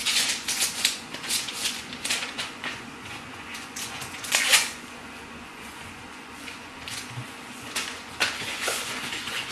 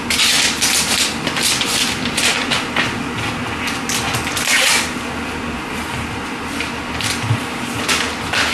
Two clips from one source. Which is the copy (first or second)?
first